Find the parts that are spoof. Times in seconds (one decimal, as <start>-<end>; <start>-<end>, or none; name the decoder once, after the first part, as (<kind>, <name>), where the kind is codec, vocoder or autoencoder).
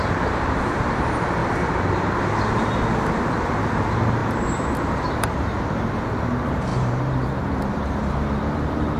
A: 0.0-1.4 (vocoder, BigVGAN v2); 2.9-9.0